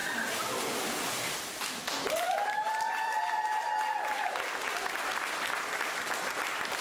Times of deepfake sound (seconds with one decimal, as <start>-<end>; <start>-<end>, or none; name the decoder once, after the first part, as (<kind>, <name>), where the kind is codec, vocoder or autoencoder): none